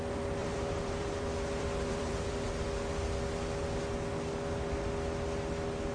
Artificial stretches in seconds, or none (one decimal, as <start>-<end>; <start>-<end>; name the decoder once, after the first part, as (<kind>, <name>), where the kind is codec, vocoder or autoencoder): 0.4-2.5 (vocoder, BigVGAN v2)